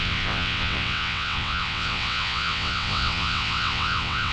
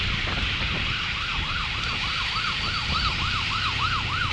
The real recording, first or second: second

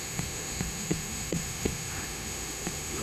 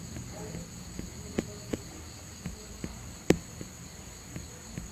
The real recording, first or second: second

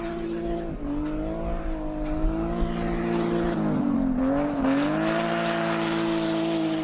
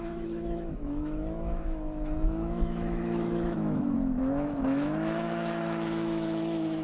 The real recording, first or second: first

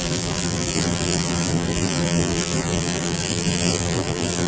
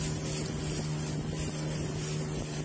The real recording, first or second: second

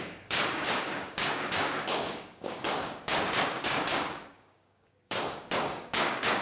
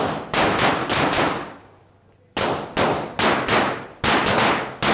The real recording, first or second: second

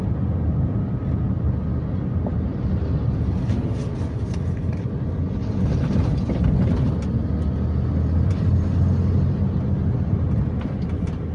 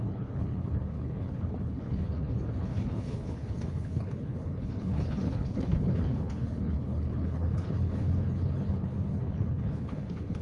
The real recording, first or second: first